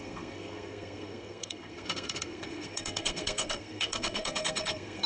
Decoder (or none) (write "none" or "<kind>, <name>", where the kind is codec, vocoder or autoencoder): codec, SNAC